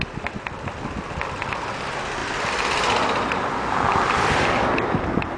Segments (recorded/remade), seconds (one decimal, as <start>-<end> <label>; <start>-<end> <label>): 0.0-5.4 recorded